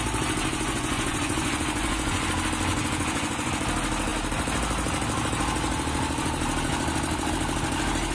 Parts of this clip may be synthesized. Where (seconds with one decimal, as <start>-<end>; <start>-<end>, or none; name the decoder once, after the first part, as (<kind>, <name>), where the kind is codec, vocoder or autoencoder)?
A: 0.5-2.3 (vocoder, Vocos); 2.7-3.5